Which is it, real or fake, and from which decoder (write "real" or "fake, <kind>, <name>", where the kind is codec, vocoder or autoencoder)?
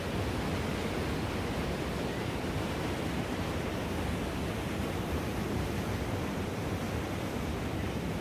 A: real